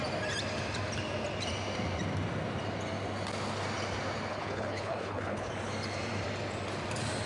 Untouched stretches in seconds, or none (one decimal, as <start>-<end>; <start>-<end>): 0.0-4.3; 5.5-7.3